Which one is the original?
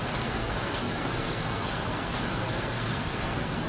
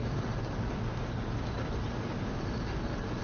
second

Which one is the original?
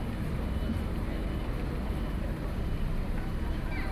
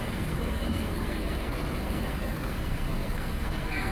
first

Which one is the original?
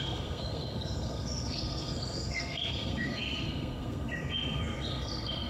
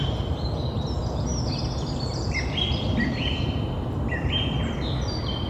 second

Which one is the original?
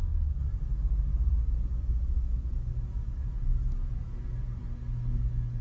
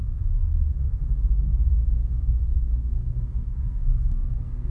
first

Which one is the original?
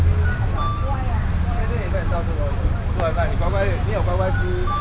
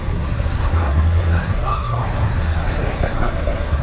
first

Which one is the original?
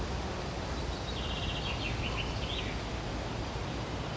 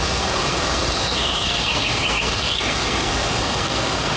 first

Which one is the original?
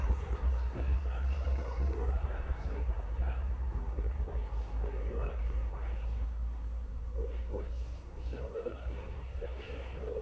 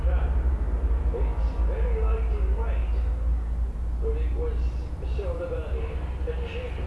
second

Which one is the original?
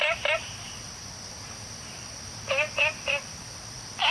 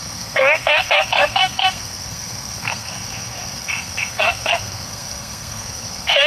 first